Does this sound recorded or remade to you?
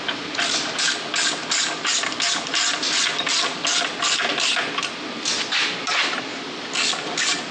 recorded